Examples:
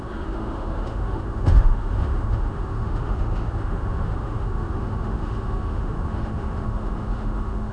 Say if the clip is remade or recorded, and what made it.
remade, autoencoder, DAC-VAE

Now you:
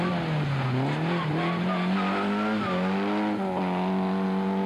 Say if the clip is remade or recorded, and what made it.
recorded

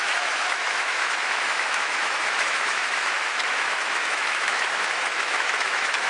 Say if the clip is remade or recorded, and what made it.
remade, autoencoder, DAC-VAE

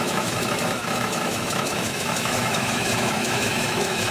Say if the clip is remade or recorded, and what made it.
remade, autoencoder, DAC-VAE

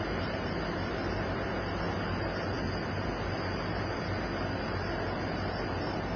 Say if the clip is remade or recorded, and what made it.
recorded